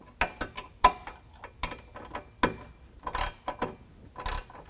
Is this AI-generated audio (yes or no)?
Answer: no